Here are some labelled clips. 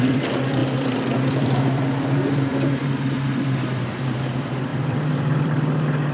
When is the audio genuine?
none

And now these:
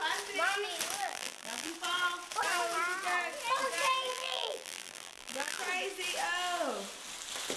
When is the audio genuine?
0.0-1.0; 1.7-4.1; 5.6-7.6

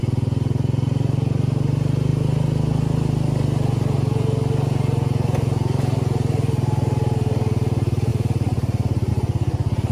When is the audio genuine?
0.0-8.1; 9.1-9.9

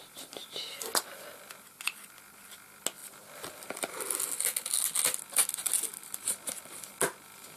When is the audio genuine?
0.0-7.6

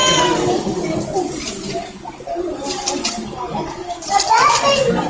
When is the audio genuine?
3.1-3.8; 4.4-5.1

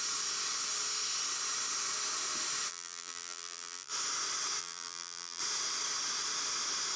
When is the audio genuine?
0.0-2.7; 3.9-4.6; 5.4-7.0

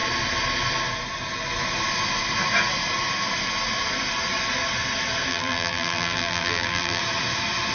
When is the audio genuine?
0.0-5.3; 7.0-7.7

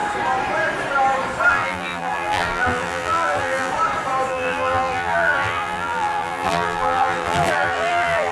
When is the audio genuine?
0.0-1.5; 3.7-4.3